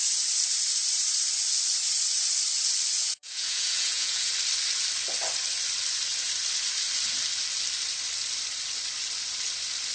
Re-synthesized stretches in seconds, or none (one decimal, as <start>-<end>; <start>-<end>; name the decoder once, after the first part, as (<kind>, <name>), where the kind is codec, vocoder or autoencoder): 3.0-4.3 (vocoder, Vocos)